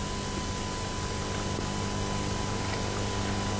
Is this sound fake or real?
real